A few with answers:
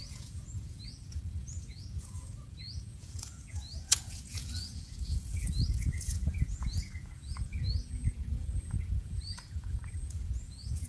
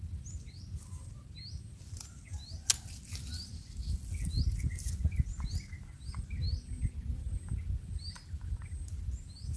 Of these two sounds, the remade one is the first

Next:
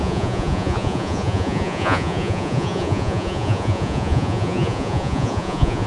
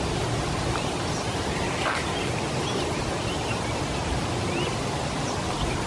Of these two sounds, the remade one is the first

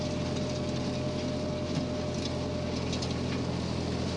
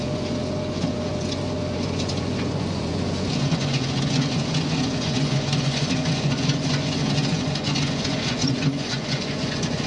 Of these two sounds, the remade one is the second